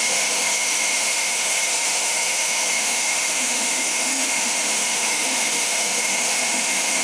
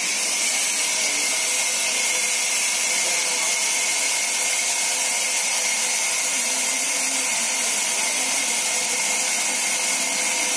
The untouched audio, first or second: second